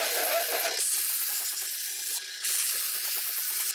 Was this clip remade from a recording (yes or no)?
no